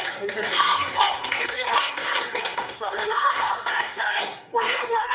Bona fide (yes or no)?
no